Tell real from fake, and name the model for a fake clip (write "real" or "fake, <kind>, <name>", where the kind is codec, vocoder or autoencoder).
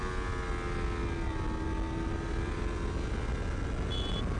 real